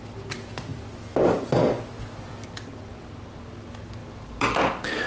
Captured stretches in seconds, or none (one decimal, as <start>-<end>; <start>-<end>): 0.0-5.1